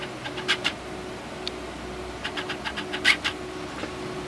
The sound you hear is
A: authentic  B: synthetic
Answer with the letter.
A